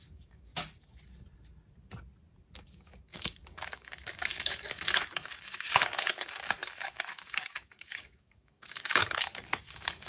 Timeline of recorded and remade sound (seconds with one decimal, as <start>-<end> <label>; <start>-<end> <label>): 0.0-0.5 remade; 0.5-2.6 recorded; 2.6-10.1 remade